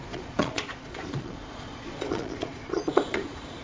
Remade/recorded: remade